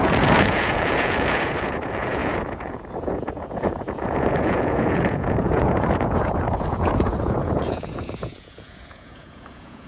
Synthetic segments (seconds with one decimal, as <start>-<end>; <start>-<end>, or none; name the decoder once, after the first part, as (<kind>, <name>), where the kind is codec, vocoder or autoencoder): 0.0-9.9 (vocoder, Vocos)